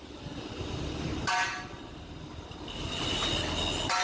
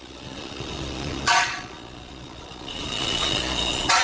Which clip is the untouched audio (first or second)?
first